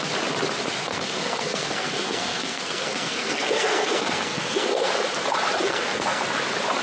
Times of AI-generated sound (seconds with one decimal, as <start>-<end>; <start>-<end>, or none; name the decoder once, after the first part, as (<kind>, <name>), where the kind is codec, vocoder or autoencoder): 0.9-4.9 (codec, SNAC); 5.6-6.2